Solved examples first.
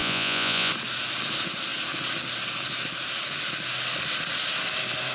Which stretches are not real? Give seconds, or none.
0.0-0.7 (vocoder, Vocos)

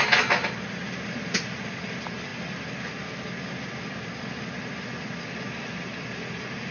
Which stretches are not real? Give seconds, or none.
none

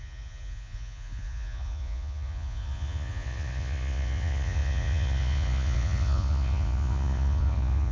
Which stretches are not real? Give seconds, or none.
0.0-7.9 (vocoder, Vocos)